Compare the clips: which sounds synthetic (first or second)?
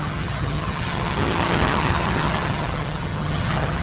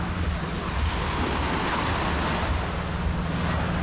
first